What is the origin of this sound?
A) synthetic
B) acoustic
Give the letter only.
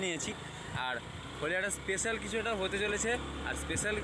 B